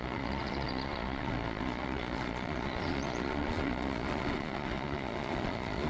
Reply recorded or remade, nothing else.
remade